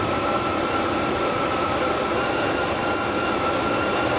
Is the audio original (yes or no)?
yes